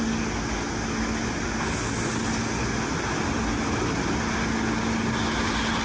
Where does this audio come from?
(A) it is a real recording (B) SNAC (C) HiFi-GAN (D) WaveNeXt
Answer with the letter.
A